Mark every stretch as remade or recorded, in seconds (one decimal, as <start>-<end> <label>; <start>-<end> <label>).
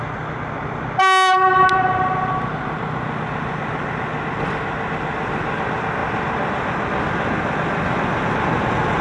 0.0-9.0 recorded